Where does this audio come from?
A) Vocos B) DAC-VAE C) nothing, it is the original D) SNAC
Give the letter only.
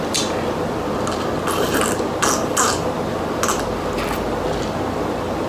C